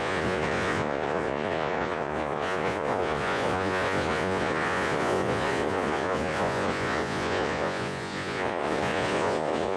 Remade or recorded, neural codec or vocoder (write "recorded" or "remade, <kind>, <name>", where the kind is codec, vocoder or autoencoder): remade, vocoder, Vocos